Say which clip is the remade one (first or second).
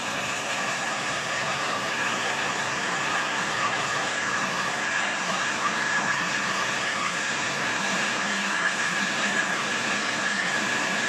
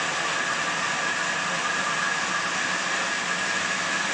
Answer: first